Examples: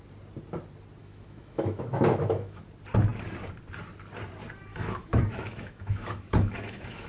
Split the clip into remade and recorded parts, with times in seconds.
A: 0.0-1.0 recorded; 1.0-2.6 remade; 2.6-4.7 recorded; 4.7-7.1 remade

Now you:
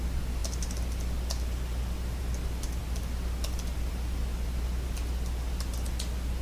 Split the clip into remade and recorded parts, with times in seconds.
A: 0.0-6.4 recorded

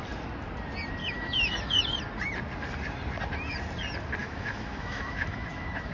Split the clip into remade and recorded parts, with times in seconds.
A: 0.0-1.0 recorded; 1.0-1.8 remade; 1.8-4.2 recorded; 4.2-5.9 remade

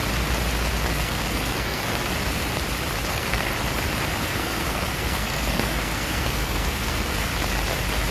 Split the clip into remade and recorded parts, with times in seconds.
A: 0.0-0.9 recorded; 0.9-2.1 remade; 2.1-3.1 recorded; 3.1-3.5 remade; 3.5-4.2 recorded; 4.2-7.3 remade; 7.3-8.1 recorded

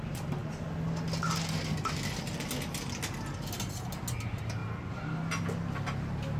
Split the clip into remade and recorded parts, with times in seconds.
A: 0.0-6.4 recorded

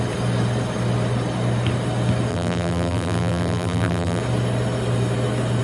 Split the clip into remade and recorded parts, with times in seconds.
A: 0.0-2.3 recorded; 2.3-4.2 remade; 4.2-5.6 recorded

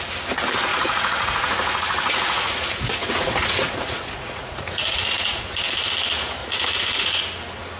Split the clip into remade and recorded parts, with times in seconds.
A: 0.0-0.7 recorded; 0.7-5.4 remade; 5.4-6.4 recorded; 6.4-7.2 remade; 7.2-7.8 recorded

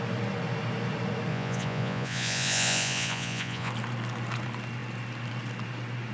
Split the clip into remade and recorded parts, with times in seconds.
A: 0.0-1.3 recorded; 1.3-3.7 remade; 3.7-6.1 recorded